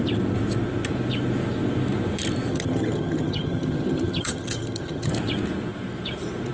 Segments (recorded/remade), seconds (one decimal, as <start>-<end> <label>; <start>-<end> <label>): 0.0-2.5 recorded; 2.5-5.1 remade; 5.1-6.5 recorded